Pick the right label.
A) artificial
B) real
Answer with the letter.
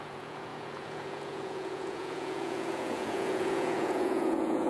A